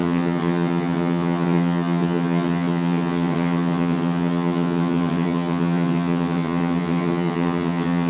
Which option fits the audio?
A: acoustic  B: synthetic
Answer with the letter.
B